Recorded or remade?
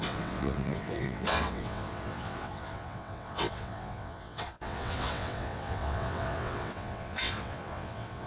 remade